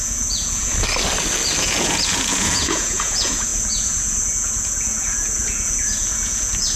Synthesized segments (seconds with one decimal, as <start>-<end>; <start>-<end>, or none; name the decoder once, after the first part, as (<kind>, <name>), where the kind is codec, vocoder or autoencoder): 0.0-0.7 (vocoder, Vocos); 1.6-6.8